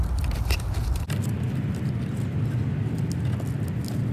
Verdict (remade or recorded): recorded